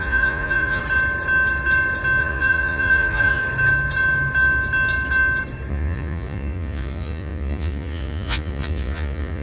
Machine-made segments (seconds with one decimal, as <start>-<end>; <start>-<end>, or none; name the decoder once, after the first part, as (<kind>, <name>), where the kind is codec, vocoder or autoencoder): 0.0-0.8 (vocoder, Vocos); 2.2-3.4; 5.7-9.4